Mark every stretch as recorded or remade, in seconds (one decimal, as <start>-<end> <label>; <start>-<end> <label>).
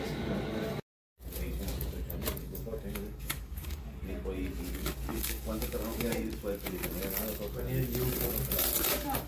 0.0-2.4 recorded; 2.4-4.0 remade; 4.0-5.1 recorded; 5.1-6.1 remade; 6.1-9.3 recorded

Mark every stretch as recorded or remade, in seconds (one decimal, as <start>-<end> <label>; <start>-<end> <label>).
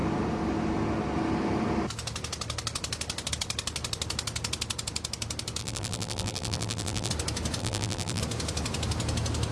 0.0-5.6 recorded; 5.6-7.1 remade; 7.1-7.6 recorded; 7.6-8.2 remade; 8.2-9.5 recorded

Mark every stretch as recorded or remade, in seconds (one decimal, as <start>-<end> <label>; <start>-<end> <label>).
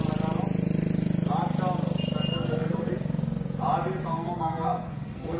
0.0-2.3 recorded; 2.3-2.9 remade; 2.9-4.1 recorded; 4.1-5.4 remade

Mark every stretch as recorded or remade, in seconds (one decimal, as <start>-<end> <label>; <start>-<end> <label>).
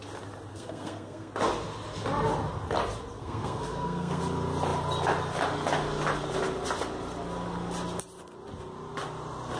0.0-0.5 recorded; 0.5-1.3 remade; 1.3-3.1 recorded; 3.1-4.2 remade; 4.2-9.6 recorded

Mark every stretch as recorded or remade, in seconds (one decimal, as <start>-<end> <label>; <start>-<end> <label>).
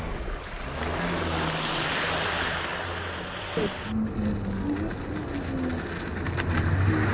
0.0-7.1 recorded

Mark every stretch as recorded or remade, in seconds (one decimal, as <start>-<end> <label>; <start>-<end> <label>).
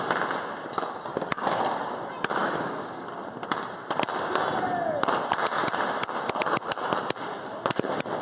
0.0-1.1 recorded; 1.1-1.6 remade; 1.6-2.4 recorded; 2.4-3.1 remade; 3.1-8.2 recorded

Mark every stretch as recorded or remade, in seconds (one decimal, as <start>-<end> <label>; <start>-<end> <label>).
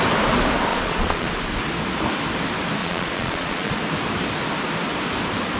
0.0-0.7 recorded; 0.7-1.3 remade; 1.3-2.8 recorded; 2.8-3.8 remade; 3.8-5.6 recorded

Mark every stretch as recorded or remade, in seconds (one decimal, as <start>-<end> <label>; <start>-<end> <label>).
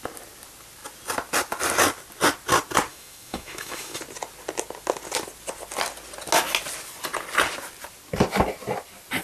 0.0-2.9 recorded; 2.9-4.0 remade; 4.0-9.2 recorded